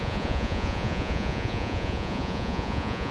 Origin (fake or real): fake